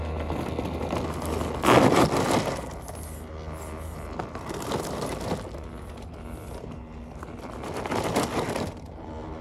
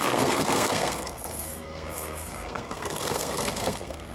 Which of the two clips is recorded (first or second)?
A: first